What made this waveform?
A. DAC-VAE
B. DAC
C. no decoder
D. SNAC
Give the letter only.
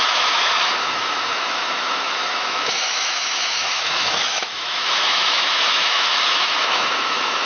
A